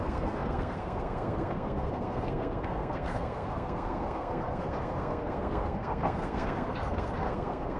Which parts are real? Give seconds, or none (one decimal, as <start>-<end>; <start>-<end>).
none